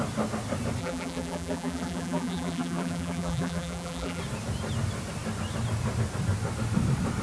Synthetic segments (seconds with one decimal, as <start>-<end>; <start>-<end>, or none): 0.8-4.2